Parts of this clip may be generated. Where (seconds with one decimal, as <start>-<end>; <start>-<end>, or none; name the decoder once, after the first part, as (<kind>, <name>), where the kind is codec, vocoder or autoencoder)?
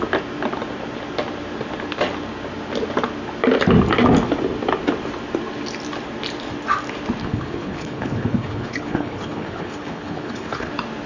7.2-10.7 (codec, HILCodec)